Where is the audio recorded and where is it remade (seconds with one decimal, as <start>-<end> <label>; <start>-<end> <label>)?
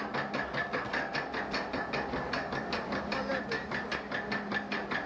0.0-5.1 recorded